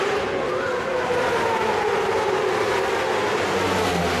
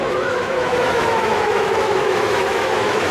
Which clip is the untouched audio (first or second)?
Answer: first